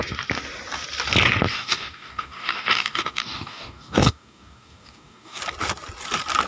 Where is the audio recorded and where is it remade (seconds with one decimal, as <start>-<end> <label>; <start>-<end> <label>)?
0.0-1.5 recorded; 1.5-5.4 remade; 5.4-6.5 recorded